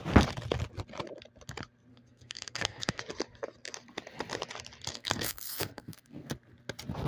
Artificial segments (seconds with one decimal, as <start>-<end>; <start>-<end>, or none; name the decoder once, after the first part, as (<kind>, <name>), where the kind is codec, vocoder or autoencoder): 1.9-3.0 (codec, SNAC); 4.9-6.3